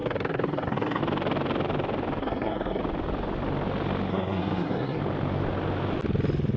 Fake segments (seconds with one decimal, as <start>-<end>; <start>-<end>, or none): 0.0-1.0; 2.2-2.8; 4.1-5.0